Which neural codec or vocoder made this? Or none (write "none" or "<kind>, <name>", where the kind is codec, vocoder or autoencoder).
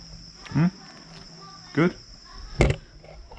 none